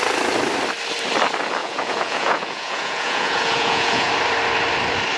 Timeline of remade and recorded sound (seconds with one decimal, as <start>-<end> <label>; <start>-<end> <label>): 0.0-1.6 recorded; 1.6-4.1 remade; 4.1-5.2 recorded